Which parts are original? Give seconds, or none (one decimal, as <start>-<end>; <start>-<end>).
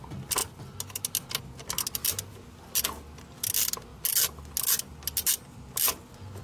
0.0-6.4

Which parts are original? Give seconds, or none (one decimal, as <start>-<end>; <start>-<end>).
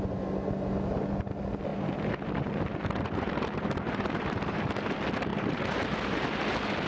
0.0-1.7; 4.6-5.3; 6.2-6.9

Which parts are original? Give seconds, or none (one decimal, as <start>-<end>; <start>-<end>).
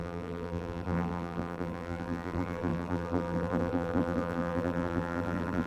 none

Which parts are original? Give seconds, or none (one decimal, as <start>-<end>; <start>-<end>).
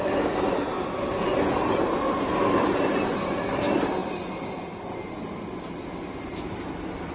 0.0-7.1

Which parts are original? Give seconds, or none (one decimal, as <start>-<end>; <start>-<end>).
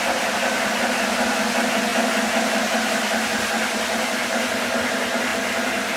0.0-6.0